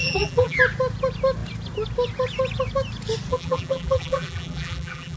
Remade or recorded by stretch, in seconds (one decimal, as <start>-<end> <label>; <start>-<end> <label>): 0.0-0.6 remade; 0.6-3.3 recorded; 3.3-5.2 remade